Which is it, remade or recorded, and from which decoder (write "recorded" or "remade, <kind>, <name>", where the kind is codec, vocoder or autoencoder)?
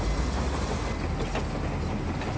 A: recorded